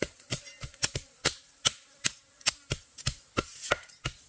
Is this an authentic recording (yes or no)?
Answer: yes